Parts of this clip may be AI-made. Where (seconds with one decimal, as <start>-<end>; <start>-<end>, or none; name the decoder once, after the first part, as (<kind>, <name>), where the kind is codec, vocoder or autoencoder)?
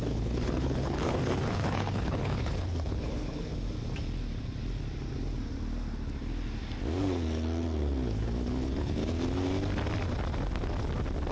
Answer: 0.0-3.5 (codec, HILCodec); 7.0-9.0